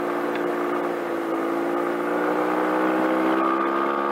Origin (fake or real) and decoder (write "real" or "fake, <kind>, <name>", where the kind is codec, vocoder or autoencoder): real